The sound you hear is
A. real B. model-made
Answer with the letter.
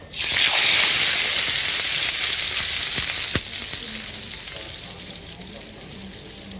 A